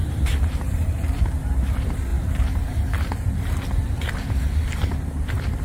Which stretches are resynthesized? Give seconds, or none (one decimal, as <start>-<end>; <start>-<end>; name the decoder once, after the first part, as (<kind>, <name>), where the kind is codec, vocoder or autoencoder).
0.0-1.2 (vocoder, BigVGAN v2); 2.1-3.0